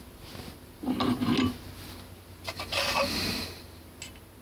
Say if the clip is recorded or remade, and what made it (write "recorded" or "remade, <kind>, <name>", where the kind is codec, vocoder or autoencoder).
recorded